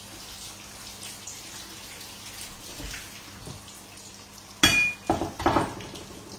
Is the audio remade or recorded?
recorded